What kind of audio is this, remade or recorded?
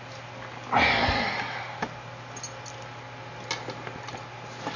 recorded